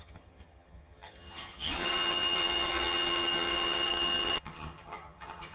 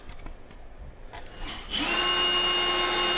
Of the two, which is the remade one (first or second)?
first